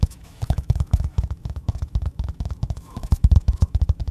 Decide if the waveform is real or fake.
fake